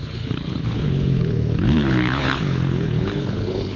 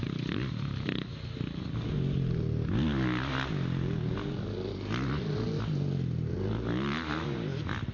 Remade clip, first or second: first